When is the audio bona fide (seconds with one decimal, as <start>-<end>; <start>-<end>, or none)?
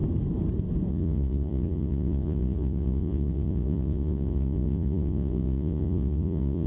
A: 0.0-0.9